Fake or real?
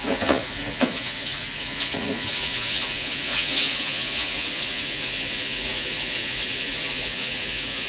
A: fake